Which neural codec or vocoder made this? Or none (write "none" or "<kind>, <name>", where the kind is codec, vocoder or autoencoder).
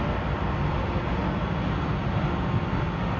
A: none